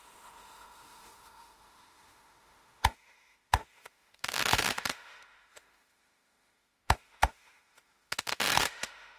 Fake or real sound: fake